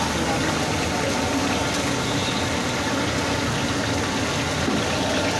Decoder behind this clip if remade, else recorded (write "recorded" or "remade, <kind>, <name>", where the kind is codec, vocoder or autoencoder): recorded